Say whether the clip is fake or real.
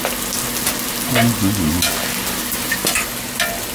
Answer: real